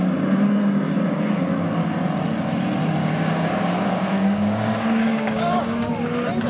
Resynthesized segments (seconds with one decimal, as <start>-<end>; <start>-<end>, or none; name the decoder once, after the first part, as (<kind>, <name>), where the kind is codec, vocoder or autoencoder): 3.0-5.9 (codec, DAC)